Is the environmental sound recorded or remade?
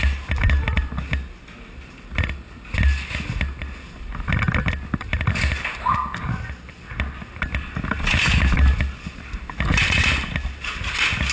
recorded